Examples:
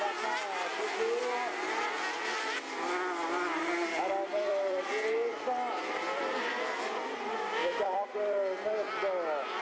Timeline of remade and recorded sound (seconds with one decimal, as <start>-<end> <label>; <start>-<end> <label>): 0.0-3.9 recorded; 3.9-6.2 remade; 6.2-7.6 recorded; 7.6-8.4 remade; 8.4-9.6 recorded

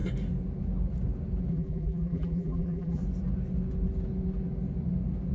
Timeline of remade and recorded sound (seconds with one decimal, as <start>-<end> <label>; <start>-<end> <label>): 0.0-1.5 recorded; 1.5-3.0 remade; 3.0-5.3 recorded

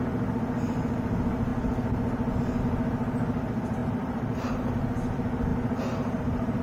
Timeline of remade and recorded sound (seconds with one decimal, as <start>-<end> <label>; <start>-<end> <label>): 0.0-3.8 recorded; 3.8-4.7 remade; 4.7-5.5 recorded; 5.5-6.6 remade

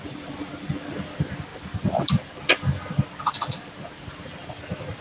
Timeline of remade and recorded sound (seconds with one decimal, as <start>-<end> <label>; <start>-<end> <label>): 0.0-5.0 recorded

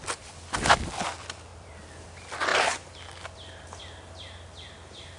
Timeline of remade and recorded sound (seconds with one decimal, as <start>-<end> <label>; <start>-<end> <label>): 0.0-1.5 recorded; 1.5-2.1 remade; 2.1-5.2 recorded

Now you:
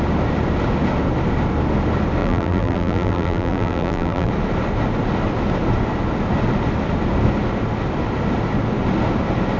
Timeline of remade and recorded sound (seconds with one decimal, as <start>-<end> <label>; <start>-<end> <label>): 0.0-2.2 recorded; 2.2-4.3 remade; 4.3-9.6 recorded